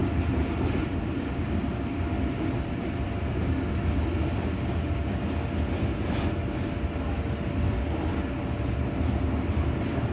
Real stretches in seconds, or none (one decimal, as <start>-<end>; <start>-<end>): 0.0-10.1